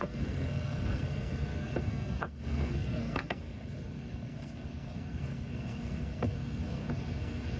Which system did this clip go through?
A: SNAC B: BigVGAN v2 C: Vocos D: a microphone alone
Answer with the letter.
A